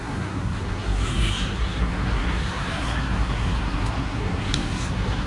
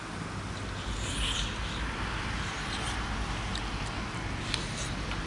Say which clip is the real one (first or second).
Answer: second